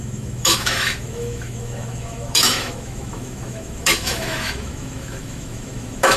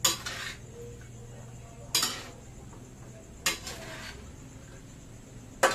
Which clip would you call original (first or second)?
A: second